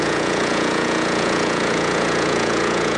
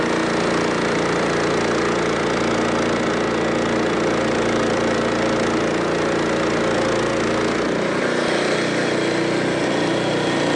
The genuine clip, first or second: second